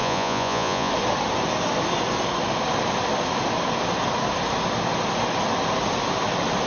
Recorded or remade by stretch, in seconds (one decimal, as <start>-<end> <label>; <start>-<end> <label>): 0.0-0.9 remade; 0.9-6.7 recorded